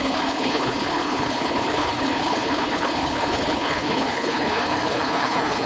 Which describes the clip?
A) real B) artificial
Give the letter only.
B